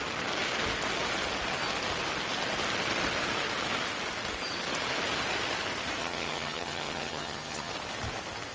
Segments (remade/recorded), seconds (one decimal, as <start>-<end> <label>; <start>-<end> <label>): 0.0-6.0 recorded; 6.0-7.7 remade; 7.7-8.5 recorded